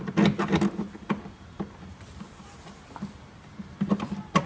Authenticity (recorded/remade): recorded